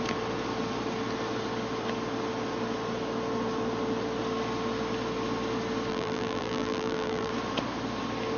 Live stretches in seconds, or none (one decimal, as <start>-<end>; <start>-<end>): 0.0-5.9; 7.3-8.4

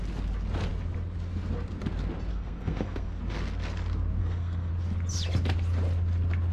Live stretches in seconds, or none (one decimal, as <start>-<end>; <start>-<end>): 0.0-2.3; 3.2-4.2; 4.7-6.5

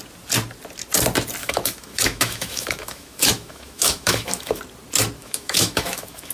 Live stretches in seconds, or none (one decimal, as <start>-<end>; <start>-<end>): 0.0-1.4; 4.6-5.2

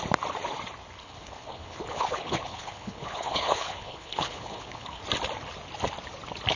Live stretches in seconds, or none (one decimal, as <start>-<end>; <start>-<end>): 0.0-1.0; 5.0-6.6

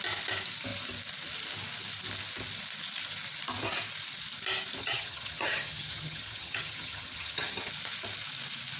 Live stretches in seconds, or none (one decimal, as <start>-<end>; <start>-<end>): 0.0-4.8; 7.7-8.8

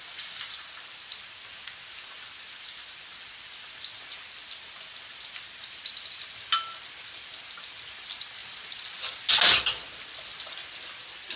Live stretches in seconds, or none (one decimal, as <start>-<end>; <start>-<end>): 0.0-11.4

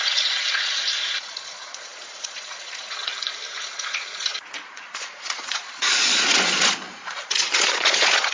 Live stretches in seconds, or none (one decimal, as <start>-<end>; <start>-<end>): 3.1-3.6